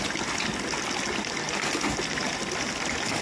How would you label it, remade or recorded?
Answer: recorded